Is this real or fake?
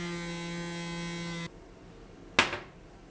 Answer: real